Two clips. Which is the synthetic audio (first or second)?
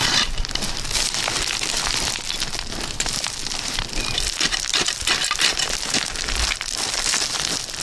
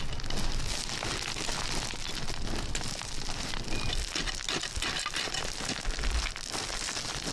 first